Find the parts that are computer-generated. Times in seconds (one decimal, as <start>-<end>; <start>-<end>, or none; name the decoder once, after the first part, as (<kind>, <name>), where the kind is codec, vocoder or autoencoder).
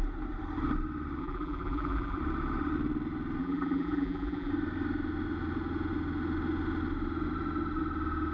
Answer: 1.2-2.2 (vocoder, BigVGAN v2); 3.4-4.5